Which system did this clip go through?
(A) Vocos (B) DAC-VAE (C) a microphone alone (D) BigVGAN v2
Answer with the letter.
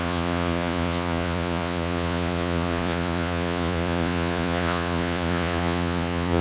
A